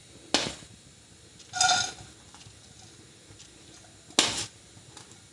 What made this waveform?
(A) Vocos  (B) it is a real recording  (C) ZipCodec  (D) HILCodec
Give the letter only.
B